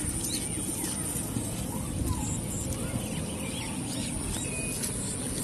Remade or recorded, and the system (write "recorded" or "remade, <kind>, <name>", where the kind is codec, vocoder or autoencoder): recorded